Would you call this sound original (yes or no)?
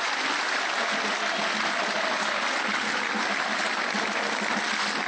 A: yes